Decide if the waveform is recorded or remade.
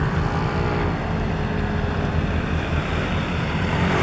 remade